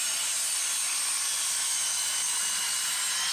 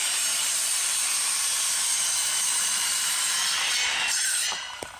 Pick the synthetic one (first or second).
second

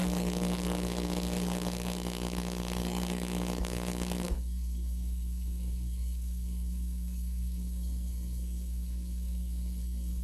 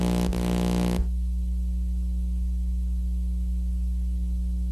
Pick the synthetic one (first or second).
first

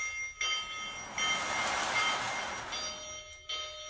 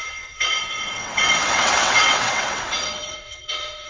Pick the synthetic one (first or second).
second